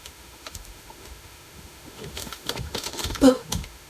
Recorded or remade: remade